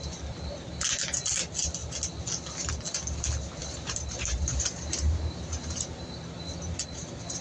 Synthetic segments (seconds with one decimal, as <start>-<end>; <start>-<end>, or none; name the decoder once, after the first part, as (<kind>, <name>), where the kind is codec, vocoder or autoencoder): 3.6-6.1 (vocoder, BigVGAN v2)